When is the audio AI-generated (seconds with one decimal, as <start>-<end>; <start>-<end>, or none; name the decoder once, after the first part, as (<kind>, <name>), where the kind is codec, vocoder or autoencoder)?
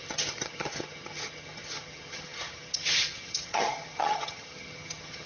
0.0-5.3 (vocoder, HiFi-GAN)